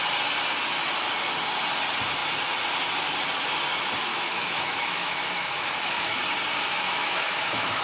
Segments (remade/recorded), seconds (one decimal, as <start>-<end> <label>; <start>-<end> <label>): 0.0-4.1 recorded; 4.1-6.2 remade; 6.2-6.7 recorded; 6.7-7.8 remade